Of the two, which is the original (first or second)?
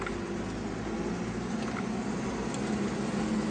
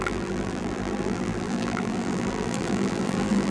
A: first